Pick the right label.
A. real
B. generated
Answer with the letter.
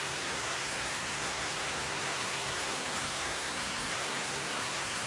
B